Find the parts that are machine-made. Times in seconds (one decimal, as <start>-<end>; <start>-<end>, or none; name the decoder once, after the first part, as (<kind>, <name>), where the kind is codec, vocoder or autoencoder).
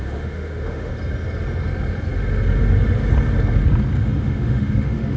0.0-0.9 (autoencoder, DAC-VAE); 4.0-5.2